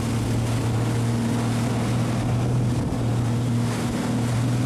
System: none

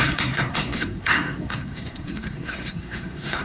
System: codec, SNAC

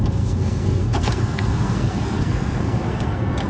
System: codec, SNAC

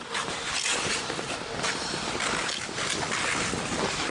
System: none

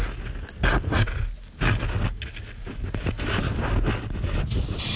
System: none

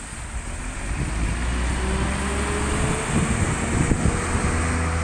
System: none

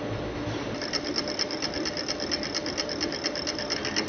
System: none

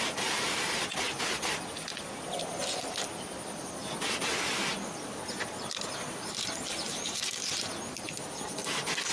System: none